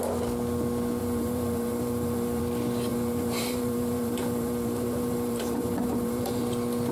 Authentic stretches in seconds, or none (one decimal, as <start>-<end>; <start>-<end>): 0.0-1.0; 2.4-2.9; 6.4-6.9